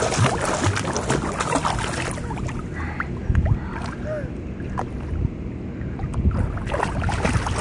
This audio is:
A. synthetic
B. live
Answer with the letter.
B